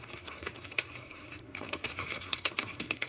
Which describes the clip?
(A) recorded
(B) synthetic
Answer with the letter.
B